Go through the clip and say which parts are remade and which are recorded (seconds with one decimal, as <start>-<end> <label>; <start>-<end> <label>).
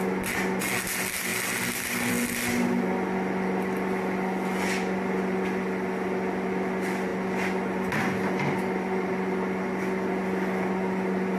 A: 0.0-11.4 recorded